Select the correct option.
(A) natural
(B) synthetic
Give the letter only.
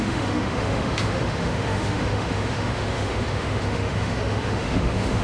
B